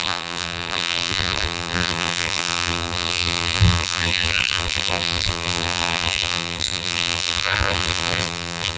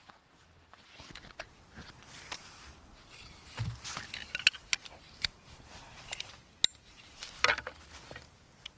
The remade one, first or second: first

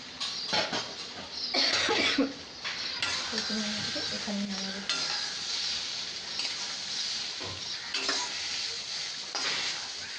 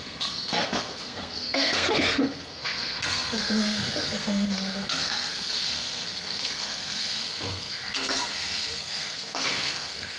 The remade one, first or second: second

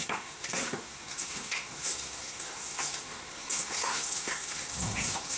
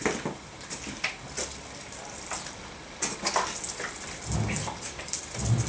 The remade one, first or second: first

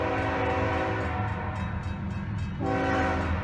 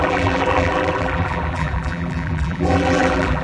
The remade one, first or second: second